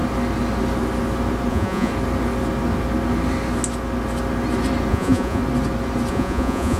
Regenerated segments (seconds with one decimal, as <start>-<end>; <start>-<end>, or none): 1.5-1.9; 4.9-5.4; 6.1-6.8